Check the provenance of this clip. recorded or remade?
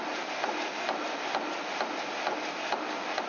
recorded